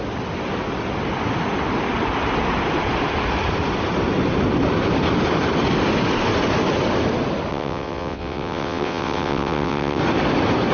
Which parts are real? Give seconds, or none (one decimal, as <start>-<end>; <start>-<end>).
0.0-7.5; 10.0-10.7